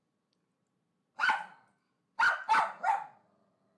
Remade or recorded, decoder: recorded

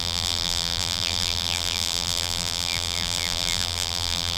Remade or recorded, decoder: remade, vocoder, BigVGAN v2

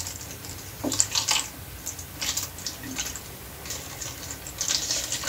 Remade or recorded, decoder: recorded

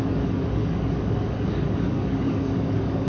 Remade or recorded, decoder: remade, codec, DAC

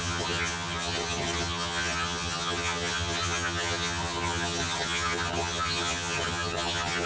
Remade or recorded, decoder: remade, vocoder, HiFi-GAN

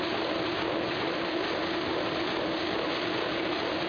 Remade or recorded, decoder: recorded